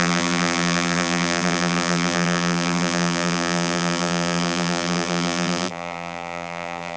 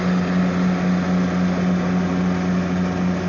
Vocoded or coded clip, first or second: first